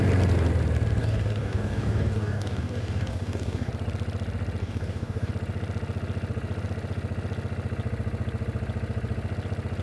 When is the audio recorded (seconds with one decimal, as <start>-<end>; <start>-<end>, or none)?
0.0-1.0; 3.7-4.6; 5.3-9.8